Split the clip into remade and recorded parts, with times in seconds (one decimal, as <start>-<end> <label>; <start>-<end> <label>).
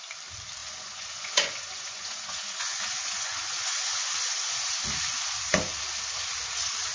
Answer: 0.0-0.6 recorded; 0.6-4.7 remade; 4.7-6.9 recorded